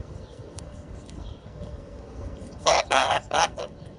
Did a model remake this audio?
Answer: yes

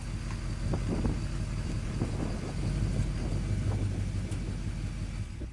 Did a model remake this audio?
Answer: no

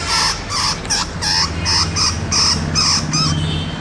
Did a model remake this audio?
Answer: no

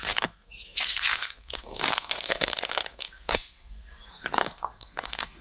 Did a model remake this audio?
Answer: yes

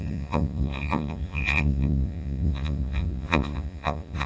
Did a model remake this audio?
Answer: yes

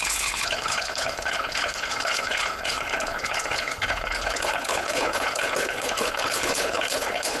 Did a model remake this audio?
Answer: yes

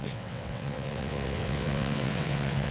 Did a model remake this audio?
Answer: yes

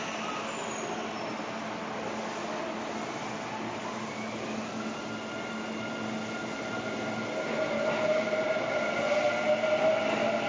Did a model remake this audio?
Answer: no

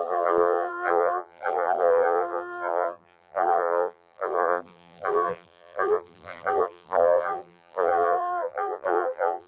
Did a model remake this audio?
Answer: yes